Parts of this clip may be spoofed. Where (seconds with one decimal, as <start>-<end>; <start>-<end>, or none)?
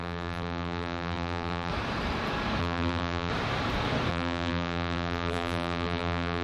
0.0-1.7; 2.6-3.3; 4.1-6.4